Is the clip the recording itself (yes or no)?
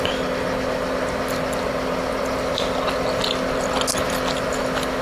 yes